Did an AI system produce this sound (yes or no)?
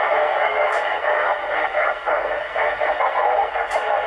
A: yes